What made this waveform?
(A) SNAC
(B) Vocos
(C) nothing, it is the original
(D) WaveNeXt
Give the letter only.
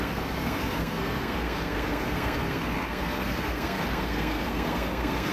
A